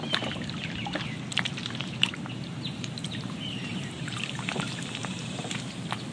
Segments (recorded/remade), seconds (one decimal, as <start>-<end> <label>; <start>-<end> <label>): 0.0-1.6 recorded; 1.6-5.2 remade; 5.2-6.1 recorded